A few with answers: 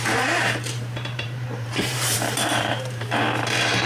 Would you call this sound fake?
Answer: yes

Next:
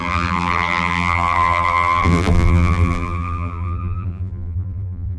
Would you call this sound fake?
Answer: yes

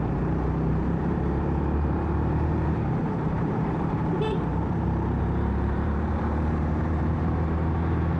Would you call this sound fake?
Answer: yes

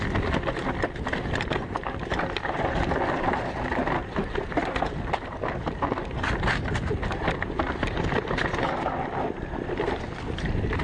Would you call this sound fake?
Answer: no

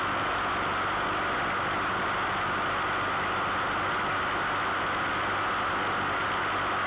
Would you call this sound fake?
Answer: no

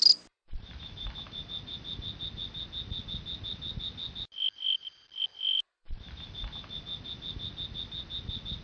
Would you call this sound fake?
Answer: no